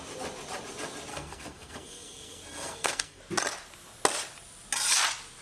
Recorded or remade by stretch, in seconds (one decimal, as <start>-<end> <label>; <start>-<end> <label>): 0.0-1.1 recorded; 1.1-3.2 remade; 3.2-5.4 recorded